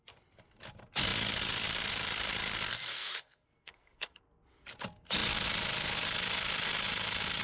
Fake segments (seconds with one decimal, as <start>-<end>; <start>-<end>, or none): 2.7-4.2